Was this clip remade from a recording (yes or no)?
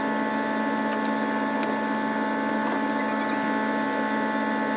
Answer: no